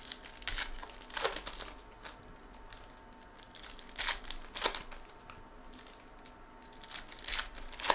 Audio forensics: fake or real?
real